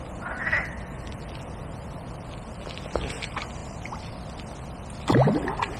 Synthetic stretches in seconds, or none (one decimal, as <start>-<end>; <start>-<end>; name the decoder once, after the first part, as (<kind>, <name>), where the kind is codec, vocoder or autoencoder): 3.6-4.1 (vocoder, BigVGAN v2)